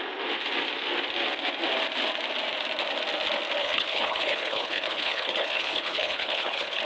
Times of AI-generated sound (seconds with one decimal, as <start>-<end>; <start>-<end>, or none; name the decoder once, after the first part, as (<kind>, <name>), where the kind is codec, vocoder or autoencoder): 3.6-6.8 (codec, HILCodec)